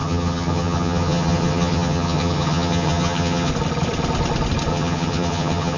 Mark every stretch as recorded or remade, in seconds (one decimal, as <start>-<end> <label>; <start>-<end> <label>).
0.0-3.5 remade; 3.5-4.7 recorded; 4.7-5.8 remade